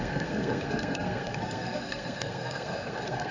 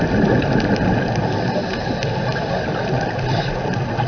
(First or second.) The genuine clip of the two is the second